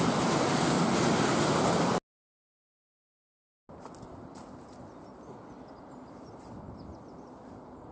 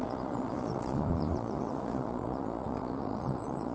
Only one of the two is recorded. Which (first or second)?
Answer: first